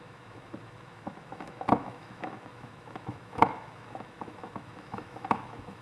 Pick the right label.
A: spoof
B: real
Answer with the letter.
A